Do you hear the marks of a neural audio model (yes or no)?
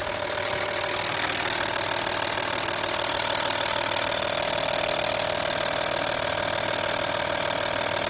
no